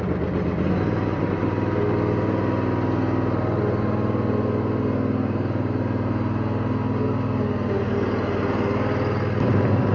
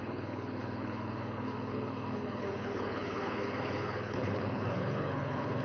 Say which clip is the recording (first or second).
first